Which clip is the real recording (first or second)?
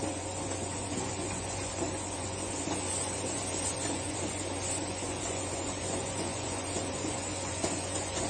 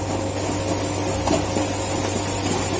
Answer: second